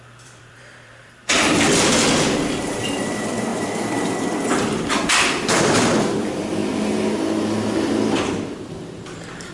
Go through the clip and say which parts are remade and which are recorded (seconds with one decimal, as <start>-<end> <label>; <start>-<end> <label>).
0.0-6.6 remade; 6.6-8.2 recorded; 8.2-9.5 remade